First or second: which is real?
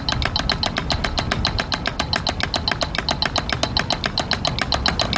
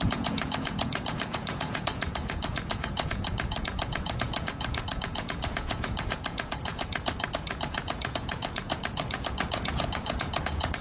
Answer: first